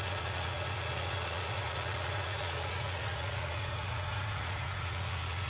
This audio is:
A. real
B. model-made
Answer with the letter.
B